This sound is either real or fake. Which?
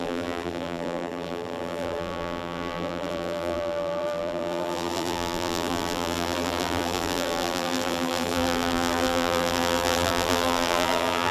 fake